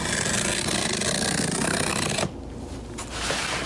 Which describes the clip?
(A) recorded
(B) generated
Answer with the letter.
A